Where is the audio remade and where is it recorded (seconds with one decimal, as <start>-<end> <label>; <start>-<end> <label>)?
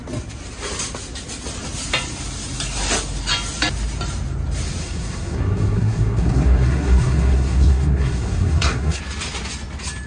0.0-4.8 recorded; 4.8-9.0 remade; 9.0-10.1 recorded